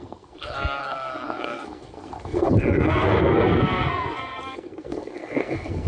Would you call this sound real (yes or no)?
no